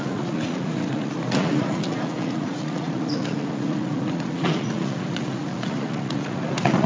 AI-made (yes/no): yes